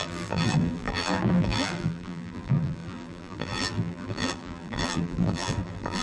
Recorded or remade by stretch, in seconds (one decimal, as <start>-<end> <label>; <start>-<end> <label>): 0.0-6.0 remade